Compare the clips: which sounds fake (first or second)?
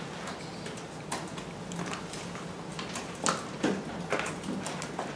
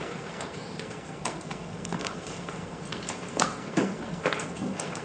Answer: second